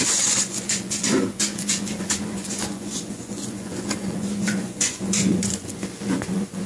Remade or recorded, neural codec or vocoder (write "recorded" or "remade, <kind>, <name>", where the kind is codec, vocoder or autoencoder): remade, vocoder, Vocos